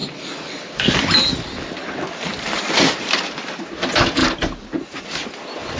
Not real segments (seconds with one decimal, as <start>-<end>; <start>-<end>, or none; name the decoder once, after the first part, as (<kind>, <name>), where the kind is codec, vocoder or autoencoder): 2.3-3.6 (vocoder, BigVGAN v2); 4.2-4.8